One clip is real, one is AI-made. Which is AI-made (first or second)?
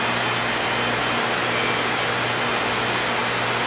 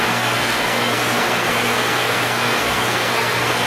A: second